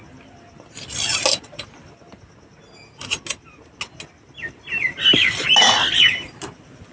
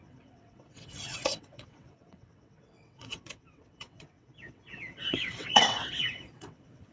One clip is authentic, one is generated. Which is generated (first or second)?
second